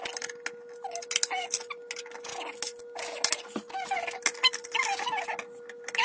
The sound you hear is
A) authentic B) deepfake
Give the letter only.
A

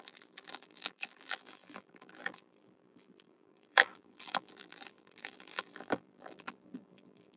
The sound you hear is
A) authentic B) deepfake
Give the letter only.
B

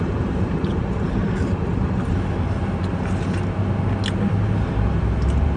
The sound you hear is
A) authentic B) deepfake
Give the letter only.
A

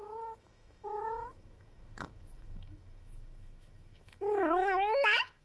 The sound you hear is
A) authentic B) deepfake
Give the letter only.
B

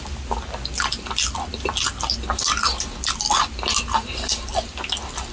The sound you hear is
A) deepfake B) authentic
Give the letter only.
B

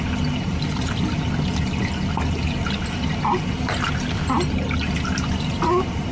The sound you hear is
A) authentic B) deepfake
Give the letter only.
A